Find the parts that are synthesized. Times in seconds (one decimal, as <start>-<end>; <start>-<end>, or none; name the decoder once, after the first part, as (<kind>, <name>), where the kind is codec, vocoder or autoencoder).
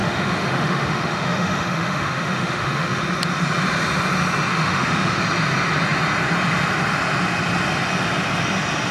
0.0-3.0 (autoencoder, DAC-VAE); 4.5-5.2